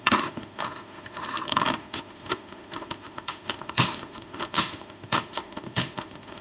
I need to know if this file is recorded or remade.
remade